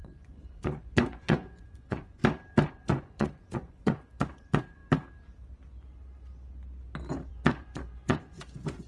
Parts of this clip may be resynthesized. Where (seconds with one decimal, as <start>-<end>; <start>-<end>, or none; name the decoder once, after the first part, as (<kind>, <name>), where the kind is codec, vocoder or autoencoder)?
0.0-2.2 (vocoder, Vocos); 2.7-4.8; 7.3-8.9